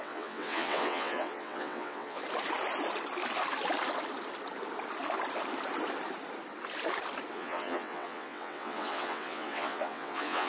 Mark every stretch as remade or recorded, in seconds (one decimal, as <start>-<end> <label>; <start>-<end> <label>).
0.0-2.2 remade; 2.2-7.3 recorded; 7.3-10.5 remade